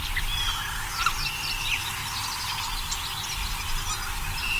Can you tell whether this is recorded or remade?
recorded